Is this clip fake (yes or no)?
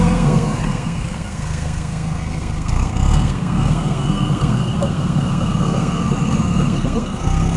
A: yes